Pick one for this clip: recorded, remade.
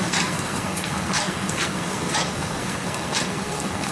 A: remade